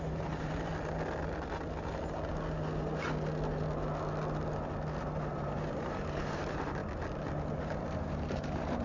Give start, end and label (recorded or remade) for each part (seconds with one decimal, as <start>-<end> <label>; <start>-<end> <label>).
0.0-0.7 remade; 0.7-5.0 recorded; 5.0-6.8 remade; 6.8-7.6 recorded; 7.6-8.8 remade